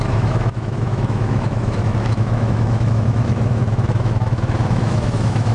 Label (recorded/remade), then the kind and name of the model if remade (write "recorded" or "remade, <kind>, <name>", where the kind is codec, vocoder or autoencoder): remade, autoencoder, DAC-VAE